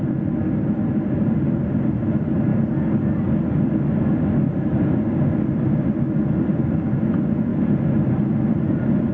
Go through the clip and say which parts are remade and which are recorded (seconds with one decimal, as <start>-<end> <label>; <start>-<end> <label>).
0.0-9.1 recorded